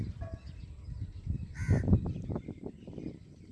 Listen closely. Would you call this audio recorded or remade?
recorded